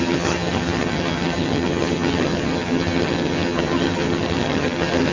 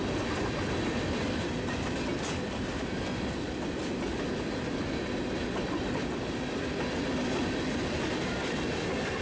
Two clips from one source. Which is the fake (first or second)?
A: first